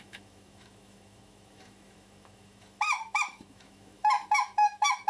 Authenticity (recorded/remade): remade